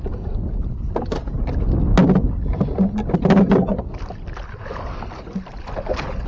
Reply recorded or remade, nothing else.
recorded